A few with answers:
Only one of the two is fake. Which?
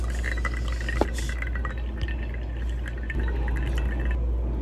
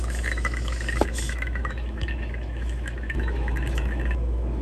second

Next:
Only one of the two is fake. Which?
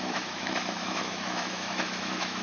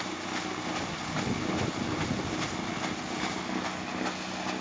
first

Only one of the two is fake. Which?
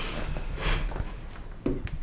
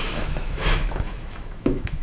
second